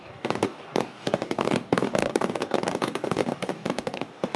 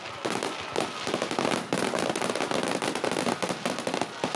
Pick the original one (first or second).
second